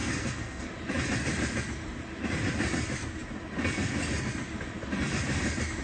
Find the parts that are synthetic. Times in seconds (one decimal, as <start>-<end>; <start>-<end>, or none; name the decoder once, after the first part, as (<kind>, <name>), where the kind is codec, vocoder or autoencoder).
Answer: 0.0-0.7 (codec, SNAC)